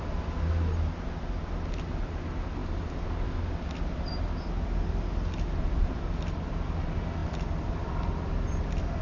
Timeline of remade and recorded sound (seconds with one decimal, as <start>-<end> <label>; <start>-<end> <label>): 0.0-9.0 recorded